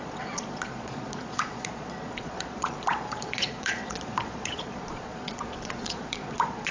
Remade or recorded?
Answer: remade